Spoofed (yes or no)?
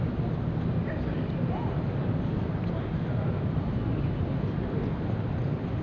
no